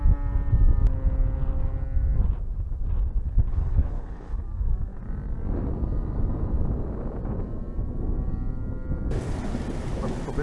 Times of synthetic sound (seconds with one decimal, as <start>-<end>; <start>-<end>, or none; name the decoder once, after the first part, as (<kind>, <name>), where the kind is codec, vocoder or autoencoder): 3.5-4.4 (codec, HILCodec)